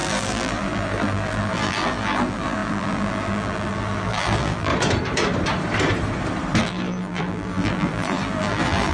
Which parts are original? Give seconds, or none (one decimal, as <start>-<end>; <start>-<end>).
4.7-6.6